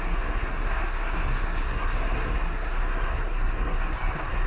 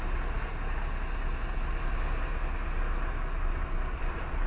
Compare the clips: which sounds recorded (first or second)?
second